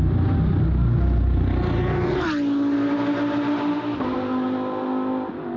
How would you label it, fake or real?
real